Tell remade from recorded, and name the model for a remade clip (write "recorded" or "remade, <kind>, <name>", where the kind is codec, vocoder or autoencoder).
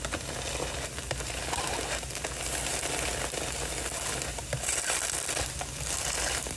recorded